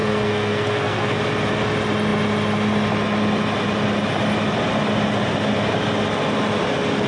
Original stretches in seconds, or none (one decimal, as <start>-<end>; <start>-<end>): 1.2-7.1

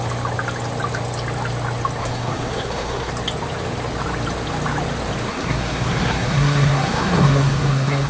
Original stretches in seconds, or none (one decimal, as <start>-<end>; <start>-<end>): 0.0-2.0; 3.1-5.3

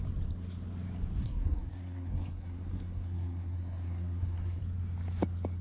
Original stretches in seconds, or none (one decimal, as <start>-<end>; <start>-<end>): 0.0-1.2; 4.6-5.6

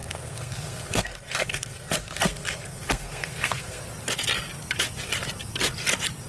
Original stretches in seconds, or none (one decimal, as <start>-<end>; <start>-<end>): 3.8-6.3

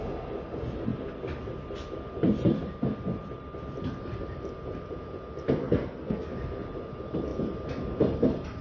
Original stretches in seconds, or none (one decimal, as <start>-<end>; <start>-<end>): 0.0-5.6; 6.3-8.6

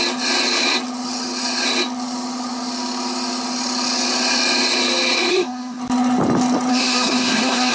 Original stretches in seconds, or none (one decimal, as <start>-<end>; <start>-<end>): 0.0-5.3; 5.8-6.7

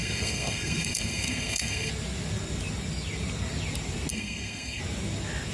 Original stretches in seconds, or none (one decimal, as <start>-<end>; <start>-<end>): 1.9-4.1; 4.8-5.5